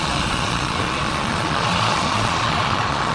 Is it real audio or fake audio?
fake